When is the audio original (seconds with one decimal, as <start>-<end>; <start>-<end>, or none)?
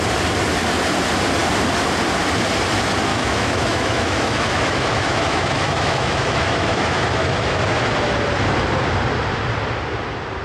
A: 0.0-3.1; 7.8-10.4